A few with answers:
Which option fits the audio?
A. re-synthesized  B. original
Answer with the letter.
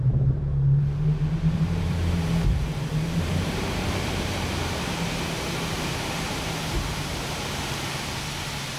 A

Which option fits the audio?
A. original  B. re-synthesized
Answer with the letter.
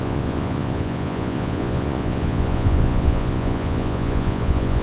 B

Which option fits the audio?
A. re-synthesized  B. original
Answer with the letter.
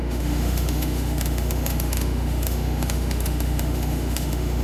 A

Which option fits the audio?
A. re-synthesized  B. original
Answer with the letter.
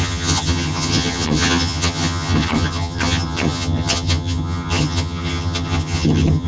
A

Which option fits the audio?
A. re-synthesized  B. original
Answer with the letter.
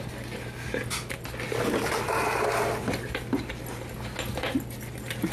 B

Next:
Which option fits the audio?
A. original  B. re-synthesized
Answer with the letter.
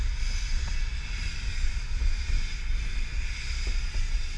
A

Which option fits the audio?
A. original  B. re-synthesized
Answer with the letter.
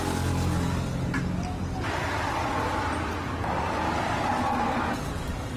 A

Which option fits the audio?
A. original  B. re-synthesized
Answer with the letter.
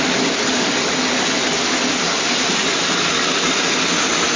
A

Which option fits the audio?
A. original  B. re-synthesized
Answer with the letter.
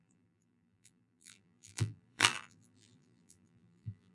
B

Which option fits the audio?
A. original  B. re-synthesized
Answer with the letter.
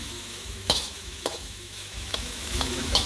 B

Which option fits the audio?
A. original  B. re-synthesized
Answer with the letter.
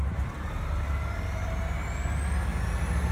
A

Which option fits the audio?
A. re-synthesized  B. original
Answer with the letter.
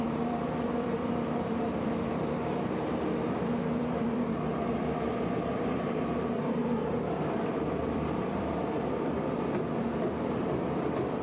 A